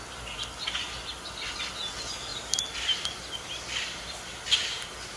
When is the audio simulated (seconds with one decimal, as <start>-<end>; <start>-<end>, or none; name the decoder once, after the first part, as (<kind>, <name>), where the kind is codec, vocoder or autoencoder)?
none